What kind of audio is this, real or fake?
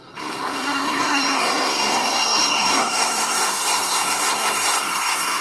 fake